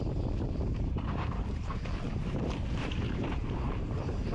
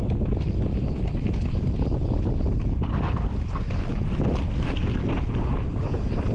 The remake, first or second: first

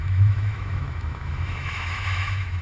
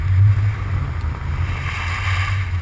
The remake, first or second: first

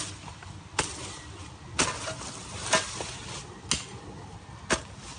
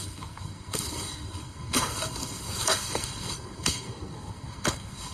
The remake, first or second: second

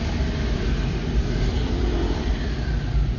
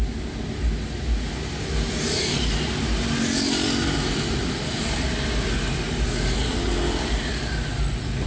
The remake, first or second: first